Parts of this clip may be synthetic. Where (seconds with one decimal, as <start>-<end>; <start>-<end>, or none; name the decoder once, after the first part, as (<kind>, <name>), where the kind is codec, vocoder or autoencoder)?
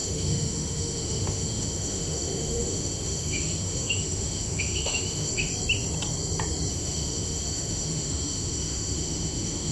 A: 0.0-5.5 (autoencoder, DAC-VAE); 6.7-9.7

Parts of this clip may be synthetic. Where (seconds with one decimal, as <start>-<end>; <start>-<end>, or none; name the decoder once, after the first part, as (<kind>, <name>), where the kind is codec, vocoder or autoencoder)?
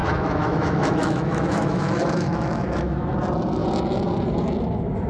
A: 0.0-3.1 (autoencoder, DAC-VAE)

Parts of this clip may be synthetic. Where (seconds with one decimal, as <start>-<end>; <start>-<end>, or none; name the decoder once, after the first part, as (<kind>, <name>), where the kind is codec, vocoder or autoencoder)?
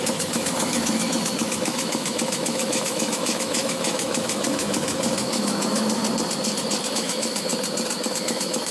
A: 0.0-6.0 (autoencoder, DAC-VAE); 6.9-7.5; 8.1-8.7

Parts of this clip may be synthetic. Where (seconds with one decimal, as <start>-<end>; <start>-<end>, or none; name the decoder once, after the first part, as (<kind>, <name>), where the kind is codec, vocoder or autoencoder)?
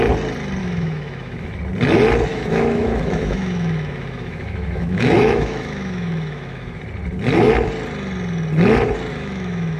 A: 0.6-1.6 (autoencoder, DAC-VAE); 2.3-6.8; 9.1-9.8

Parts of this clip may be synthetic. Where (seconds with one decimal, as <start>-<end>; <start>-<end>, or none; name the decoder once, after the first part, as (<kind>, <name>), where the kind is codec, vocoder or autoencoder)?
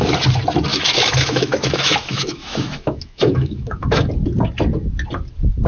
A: 0.7-4.1 (autoencoder, DAC-VAE)